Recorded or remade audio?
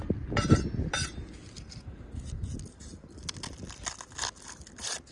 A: recorded